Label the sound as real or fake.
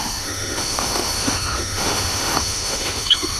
fake